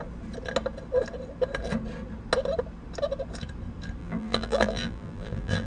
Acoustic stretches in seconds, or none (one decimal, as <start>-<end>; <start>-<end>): 0.0-4.0